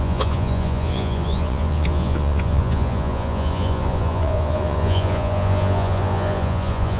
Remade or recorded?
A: remade